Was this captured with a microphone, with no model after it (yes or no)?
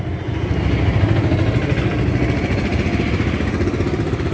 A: yes